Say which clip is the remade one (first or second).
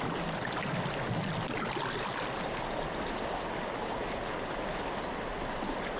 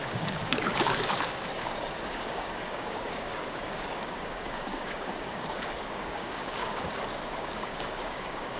second